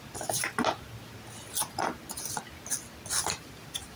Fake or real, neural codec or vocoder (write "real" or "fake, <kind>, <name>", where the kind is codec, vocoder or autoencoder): real